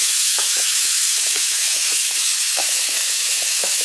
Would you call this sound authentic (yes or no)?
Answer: no